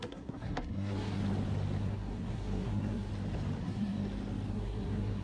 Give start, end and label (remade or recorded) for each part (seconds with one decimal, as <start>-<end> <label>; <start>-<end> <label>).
0.0-1.2 remade; 1.2-1.8 recorded; 1.8-3.1 remade; 3.1-3.6 recorded; 3.6-4.0 remade; 4.0-4.5 recorded; 4.5-5.2 remade